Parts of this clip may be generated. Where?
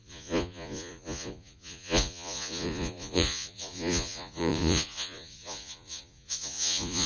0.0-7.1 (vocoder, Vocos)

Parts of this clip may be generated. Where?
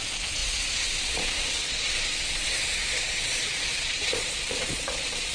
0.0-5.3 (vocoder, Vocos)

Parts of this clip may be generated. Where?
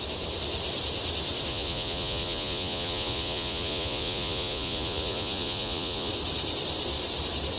1.5-6.1 (vocoder, Vocos)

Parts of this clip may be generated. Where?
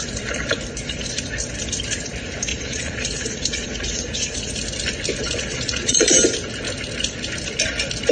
2.5-4.5 (vocoder, Vocos); 5.2-6.1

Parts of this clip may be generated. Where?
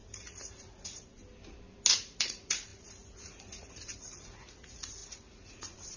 0.0-1.2 (vocoder, Vocos); 1.9-6.0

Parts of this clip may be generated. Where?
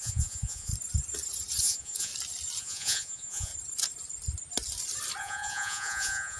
0.0-0.7 (vocoder, Vocos); 1.6-2.1; 2.6-3.5; 5.2-6.4